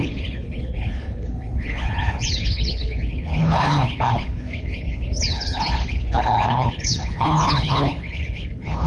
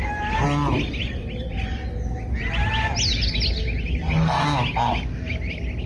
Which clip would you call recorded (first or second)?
second